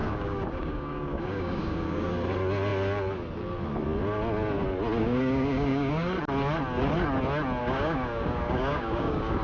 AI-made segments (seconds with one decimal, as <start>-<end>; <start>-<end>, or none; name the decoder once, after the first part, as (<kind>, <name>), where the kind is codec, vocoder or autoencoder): 0.0-2.1 (codec, DAC); 5.0-5.9; 7.6-9.4